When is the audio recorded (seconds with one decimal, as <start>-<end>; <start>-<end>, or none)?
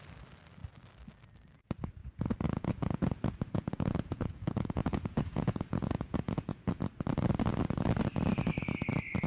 0.0-2.0; 6.8-9.3